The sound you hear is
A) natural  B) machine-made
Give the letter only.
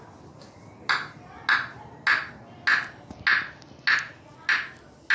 A